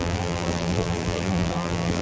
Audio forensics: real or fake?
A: fake